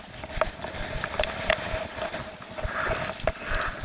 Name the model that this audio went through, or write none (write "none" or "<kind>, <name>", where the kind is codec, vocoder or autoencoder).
vocoder, BigVGAN v2